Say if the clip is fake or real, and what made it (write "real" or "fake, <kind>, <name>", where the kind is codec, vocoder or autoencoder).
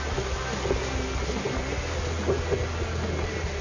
real